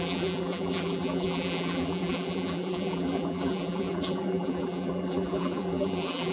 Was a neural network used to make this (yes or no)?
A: yes